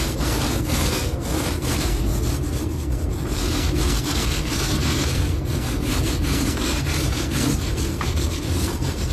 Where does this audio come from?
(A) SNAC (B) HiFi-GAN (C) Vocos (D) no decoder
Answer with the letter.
A